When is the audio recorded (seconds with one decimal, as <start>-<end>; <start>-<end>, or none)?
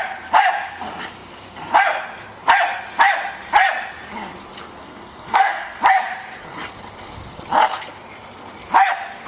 0.0-4.8; 5.8-9.3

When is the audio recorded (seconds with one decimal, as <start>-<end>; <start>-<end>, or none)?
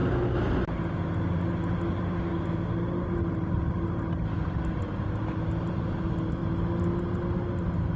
0.0-8.0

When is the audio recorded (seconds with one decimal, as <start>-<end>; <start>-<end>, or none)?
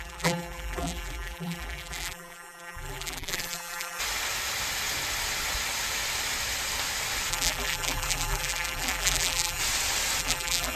4.0-7.3; 9.6-10.2